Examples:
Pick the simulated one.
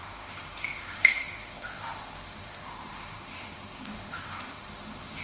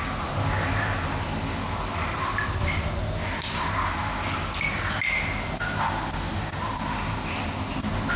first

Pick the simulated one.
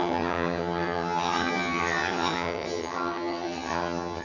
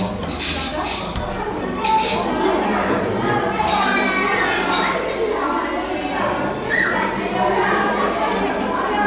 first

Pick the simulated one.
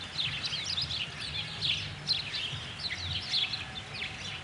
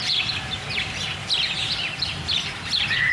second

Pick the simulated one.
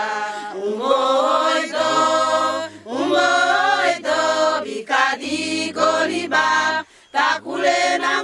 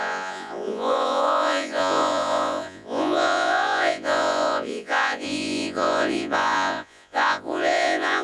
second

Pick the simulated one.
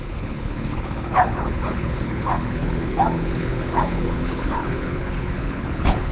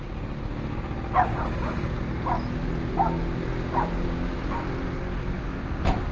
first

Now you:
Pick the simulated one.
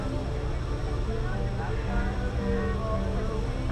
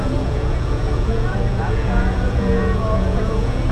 second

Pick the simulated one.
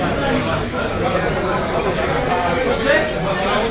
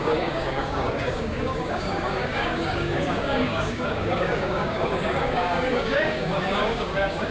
second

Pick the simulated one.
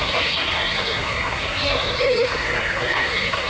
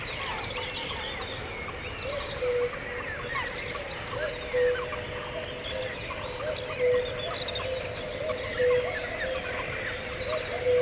first